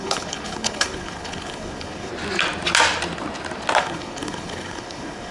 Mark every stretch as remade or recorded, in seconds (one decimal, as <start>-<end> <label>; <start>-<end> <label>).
0.0-2.1 remade; 2.1-3.8 recorded; 3.8-5.3 remade